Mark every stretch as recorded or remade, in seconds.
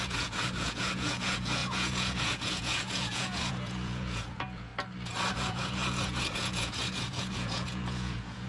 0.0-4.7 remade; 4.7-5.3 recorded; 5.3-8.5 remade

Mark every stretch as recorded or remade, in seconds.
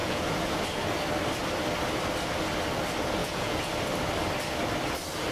0.0-0.6 remade; 0.6-3.2 recorded; 3.2-3.7 remade; 3.7-5.3 recorded